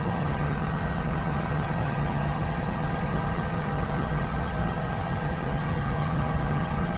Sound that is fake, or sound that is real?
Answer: fake